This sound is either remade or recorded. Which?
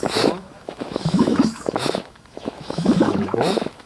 remade